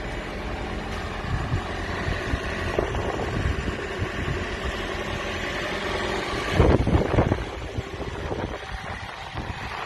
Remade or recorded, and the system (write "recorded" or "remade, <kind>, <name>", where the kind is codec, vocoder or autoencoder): recorded